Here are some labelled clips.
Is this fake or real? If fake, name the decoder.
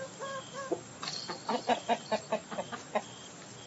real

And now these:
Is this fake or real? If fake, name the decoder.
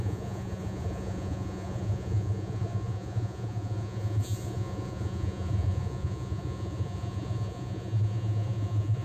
fake, vocoder, Vocos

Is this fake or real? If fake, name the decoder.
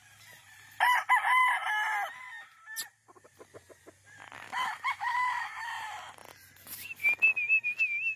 real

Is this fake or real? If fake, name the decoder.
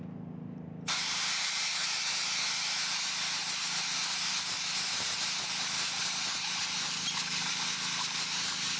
real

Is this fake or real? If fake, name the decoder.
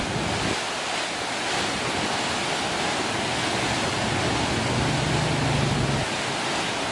real